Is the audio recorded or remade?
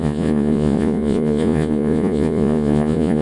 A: remade